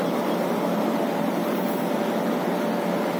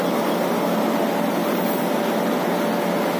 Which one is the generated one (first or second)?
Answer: first